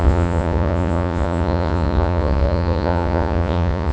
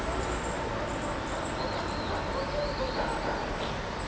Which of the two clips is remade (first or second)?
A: first